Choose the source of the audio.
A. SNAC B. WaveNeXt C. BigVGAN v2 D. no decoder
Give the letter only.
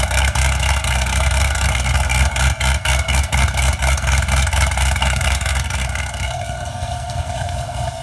A